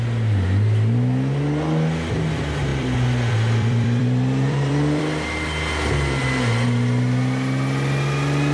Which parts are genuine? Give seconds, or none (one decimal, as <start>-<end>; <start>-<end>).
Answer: 0.0-2.7; 5.0-8.5